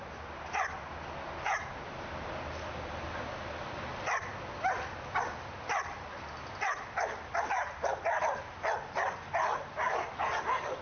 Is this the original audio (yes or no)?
yes